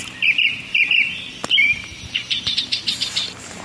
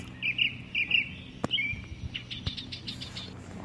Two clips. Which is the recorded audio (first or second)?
second